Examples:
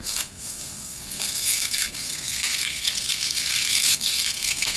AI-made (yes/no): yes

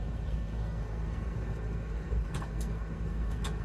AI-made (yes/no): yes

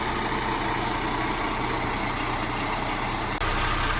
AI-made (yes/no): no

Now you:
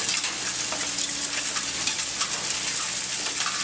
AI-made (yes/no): no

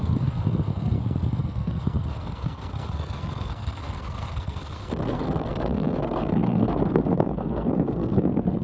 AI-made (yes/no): yes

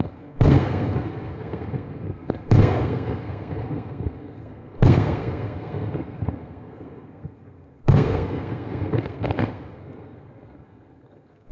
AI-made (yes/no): yes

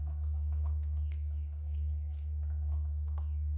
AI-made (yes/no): yes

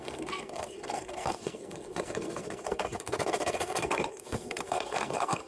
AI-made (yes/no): yes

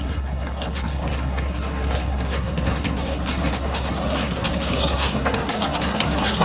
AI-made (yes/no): yes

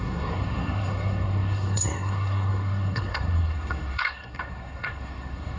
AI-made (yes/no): yes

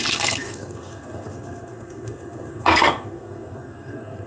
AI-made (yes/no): yes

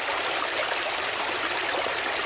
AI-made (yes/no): no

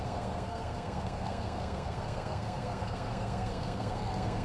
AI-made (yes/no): yes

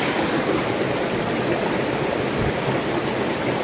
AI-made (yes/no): no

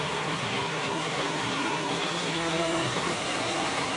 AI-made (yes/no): yes